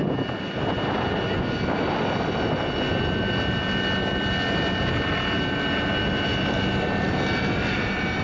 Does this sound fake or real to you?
real